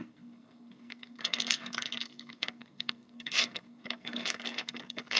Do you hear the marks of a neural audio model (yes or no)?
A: yes